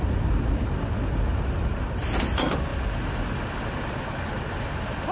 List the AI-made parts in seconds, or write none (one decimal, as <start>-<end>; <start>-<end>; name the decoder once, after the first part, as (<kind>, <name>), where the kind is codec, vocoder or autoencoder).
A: none